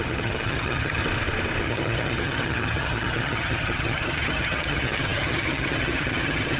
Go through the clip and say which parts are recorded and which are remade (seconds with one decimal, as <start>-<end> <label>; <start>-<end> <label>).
0.0-1.0 remade; 1.0-1.6 recorded; 1.6-6.6 remade